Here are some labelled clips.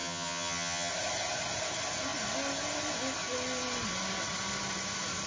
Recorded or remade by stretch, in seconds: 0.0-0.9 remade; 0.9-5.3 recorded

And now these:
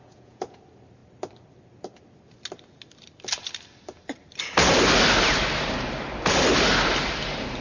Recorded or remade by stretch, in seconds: 0.0-0.6 remade; 0.6-7.6 recorded

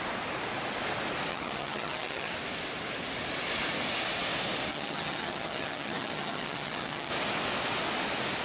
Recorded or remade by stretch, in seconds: 0.0-1.3 recorded; 1.3-2.3 remade; 2.3-4.7 recorded; 4.7-7.1 remade; 7.1-8.4 recorded

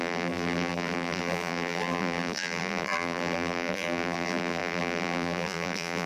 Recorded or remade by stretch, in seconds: 0.0-6.1 remade

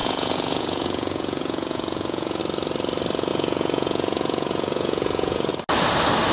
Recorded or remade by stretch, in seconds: 0.0-2.4 remade; 2.4-3.3 recorded; 3.3-5.5 remade; 5.5-6.3 recorded

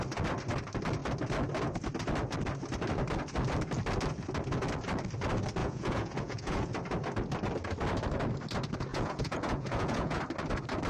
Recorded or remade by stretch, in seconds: 0.0-5.6 recorded; 5.6-6.7 remade; 6.7-8.9 recorded; 8.9-10.2 remade; 10.2-10.9 recorded